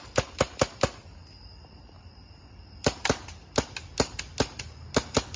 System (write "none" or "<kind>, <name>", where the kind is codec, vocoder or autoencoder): none